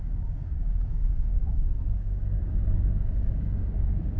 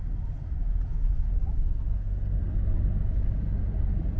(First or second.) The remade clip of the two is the first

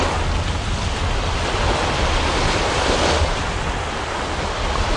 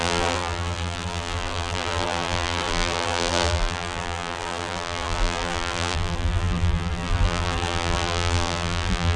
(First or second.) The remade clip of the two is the second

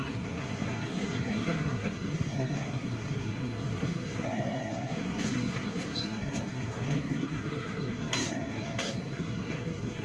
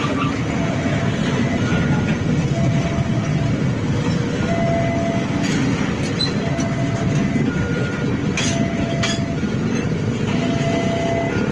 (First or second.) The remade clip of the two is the first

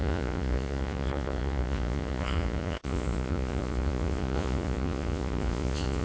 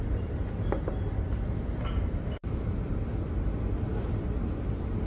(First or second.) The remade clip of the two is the first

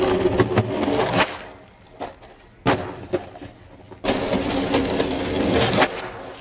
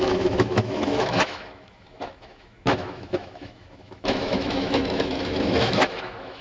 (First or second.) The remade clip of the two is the second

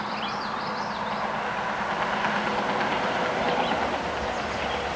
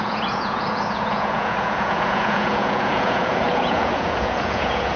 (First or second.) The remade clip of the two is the second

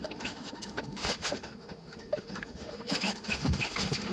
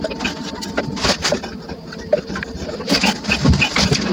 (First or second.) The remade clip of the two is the first